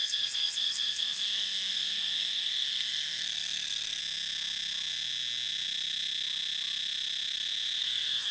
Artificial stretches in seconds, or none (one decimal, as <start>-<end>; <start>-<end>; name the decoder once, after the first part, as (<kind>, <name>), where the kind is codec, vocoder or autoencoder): 0.0-4.0 (codec, SNAC); 7.8-8.3